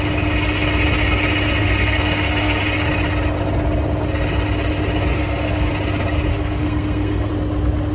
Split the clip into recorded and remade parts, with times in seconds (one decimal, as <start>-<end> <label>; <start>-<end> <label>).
0.0-1.6 recorded; 1.6-2.6 remade; 2.6-5.1 recorded; 5.1-5.7 remade; 5.7-6.3 recorded; 6.3-7.3 remade; 7.3-7.9 recorded